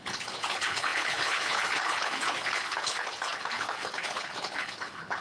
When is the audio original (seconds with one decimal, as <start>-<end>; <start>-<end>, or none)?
none